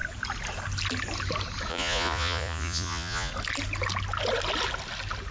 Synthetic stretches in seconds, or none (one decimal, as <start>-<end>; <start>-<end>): 1.7-3.3